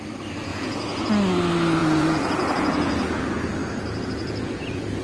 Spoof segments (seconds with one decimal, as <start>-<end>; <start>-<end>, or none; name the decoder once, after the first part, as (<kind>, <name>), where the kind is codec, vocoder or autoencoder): 0.5-1.1 (vocoder, Vocos); 1.8-5.0